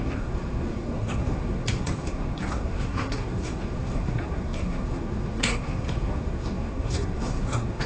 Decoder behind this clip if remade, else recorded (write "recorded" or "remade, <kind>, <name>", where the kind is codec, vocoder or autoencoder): remade, codec, SNAC